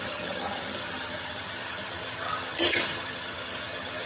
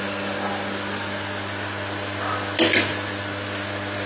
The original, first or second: second